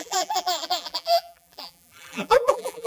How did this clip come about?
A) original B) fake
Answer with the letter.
B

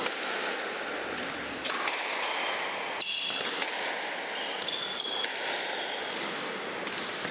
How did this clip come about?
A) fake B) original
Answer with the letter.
B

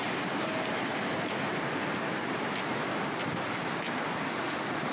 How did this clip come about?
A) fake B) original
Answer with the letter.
B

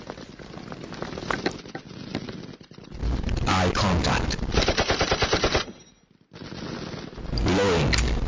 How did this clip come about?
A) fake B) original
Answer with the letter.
B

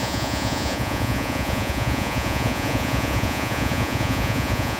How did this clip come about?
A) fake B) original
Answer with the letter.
A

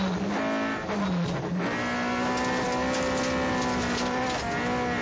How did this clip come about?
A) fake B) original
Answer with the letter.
B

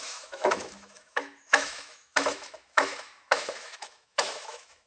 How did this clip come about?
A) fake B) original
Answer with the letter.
A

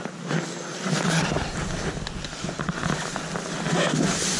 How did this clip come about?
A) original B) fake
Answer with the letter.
A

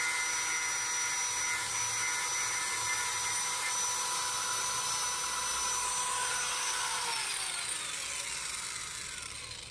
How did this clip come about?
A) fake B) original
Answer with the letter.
B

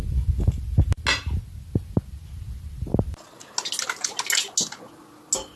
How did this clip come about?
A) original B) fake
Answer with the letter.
A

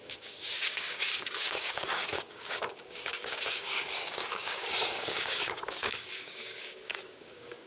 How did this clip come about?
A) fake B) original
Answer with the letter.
A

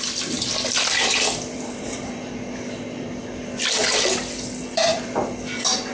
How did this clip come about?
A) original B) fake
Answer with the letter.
B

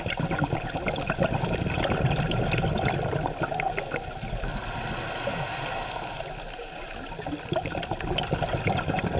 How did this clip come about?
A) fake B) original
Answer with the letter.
B